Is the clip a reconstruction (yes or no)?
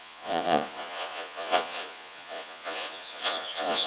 yes